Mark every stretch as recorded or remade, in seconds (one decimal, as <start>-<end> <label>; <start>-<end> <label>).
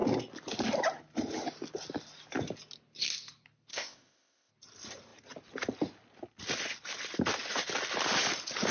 0.0-3.7 recorded; 3.7-4.5 remade; 4.5-8.7 recorded